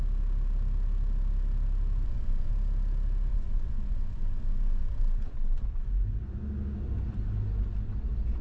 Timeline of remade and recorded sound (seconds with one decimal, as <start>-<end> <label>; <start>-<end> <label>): 0.0-2.0 recorded; 2.0-2.5 remade; 2.5-3.3 recorded; 3.3-5.6 remade; 5.6-8.4 recorded